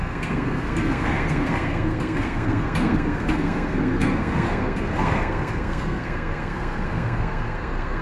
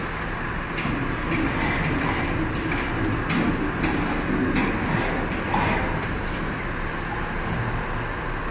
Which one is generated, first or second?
first